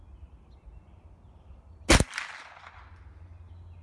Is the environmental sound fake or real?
real